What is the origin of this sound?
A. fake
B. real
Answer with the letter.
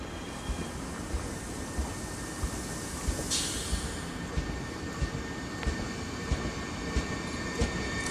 B